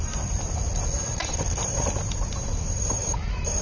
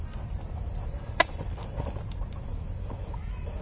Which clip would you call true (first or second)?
second